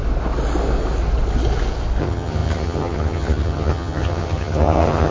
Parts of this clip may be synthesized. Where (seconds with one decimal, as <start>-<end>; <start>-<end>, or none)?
2.0-5.1